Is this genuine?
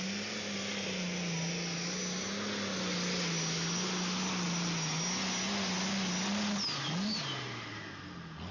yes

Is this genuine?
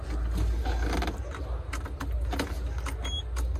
yes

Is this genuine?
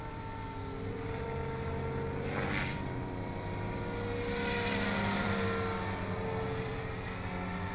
no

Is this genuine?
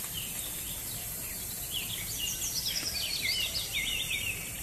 no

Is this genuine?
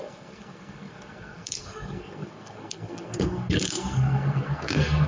no